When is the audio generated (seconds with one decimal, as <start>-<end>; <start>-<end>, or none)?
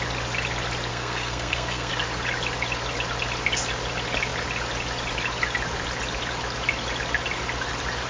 0.9-1.9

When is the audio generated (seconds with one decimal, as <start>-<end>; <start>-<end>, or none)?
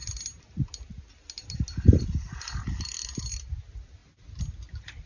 none